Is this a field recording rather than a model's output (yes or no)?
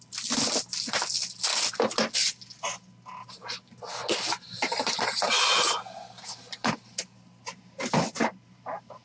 yes